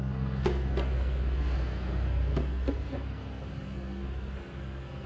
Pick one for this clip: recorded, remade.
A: remade